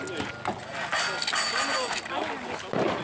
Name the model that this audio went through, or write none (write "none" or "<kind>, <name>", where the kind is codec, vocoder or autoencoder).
none